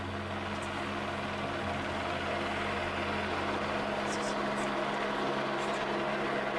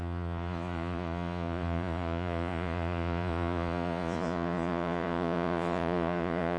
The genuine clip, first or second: first